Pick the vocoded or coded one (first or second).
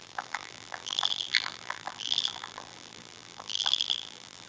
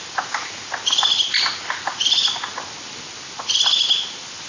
first